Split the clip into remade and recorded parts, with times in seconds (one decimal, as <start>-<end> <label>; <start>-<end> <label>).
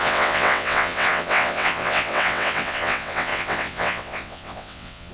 0.0-5.1 remade